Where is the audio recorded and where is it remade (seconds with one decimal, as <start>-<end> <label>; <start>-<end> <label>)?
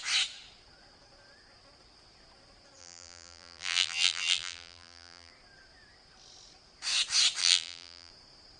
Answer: 0.0-2.8 recorded; 2.8-5.3 remade; 5.3-7.4 recorded; 7.4-8.1 remade; 8.1-8.6 recorded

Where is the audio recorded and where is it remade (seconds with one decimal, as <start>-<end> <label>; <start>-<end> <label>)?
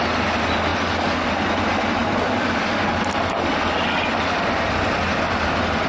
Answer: 0.0-5.9 recorded